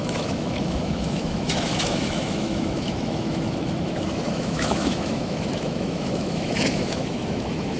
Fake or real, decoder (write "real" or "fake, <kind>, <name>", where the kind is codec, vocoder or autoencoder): fake, autoencoder, DAC-VAE